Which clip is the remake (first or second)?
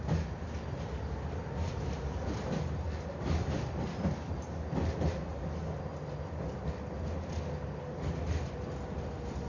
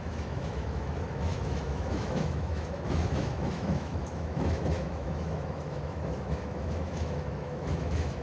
second